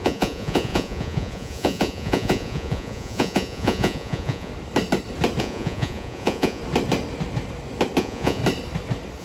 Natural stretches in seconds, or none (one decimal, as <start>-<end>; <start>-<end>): 4.5-5.4; 6.6-8.0; 8.4-9.2